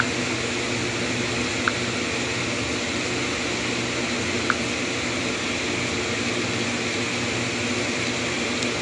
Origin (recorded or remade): recorded